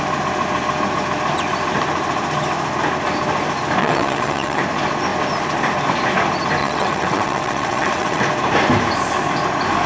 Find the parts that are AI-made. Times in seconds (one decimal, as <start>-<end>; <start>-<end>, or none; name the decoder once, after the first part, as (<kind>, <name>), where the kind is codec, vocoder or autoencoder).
3.8-4.6 (vocoder, WaveNeXt); 6.6-8.2